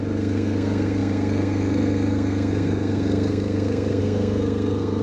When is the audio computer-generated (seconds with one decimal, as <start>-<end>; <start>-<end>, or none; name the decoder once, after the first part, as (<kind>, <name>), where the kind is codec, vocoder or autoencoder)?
0.0-5.0 (codec, SNAC)